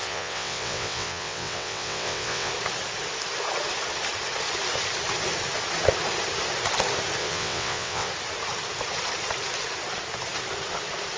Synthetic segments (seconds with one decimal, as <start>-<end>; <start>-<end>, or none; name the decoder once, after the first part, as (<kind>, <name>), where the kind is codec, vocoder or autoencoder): 0.0-2.5 (vocoder, WaveNeXt); 7.2-8.1